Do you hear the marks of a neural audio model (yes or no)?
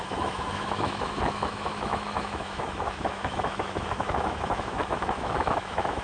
yes